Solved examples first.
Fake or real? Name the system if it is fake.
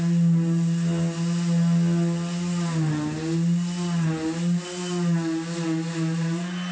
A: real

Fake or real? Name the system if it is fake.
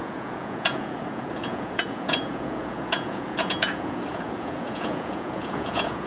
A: fake, vocoder, Vocos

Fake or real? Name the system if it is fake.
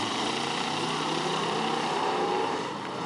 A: fake, vocoder, BigVGAN v2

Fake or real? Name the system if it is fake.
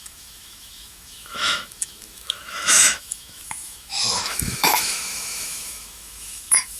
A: fake, autoencoder, DAC-VAE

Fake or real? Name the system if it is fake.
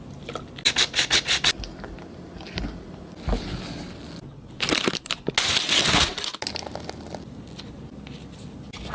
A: real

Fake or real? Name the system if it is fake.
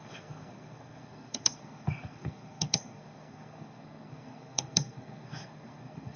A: fake, codec, SNAC